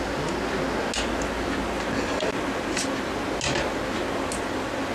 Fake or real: real